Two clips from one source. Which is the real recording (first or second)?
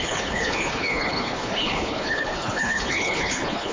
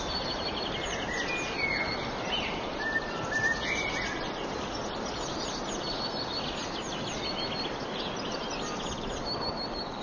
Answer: second